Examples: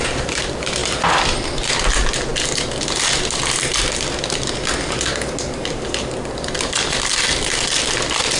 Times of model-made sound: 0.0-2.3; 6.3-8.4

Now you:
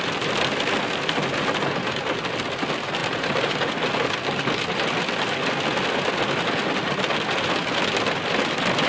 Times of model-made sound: 3.0-3.7

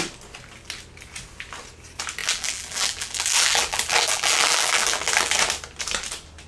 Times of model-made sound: 2.2-5.4

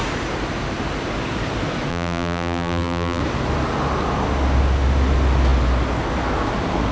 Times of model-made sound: 1.9-3.2